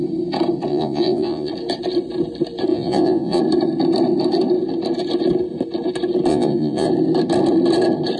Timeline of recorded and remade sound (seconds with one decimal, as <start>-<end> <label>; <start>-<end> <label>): 0.0-0.7 recorded; 0.7-1.5 remade; 1.5-2.7 recorded; 2.7-3.4 remade; 3.4-6.3 recorded; 6.3-6.9 remade; 6.9-8.2 recorded

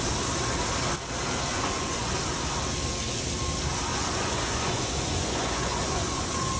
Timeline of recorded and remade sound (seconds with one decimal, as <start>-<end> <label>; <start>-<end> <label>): 0.0-1.5 recorded; 1.5-2.2 remade; 2.2-3.9 recorded; 3.9-6.6 remade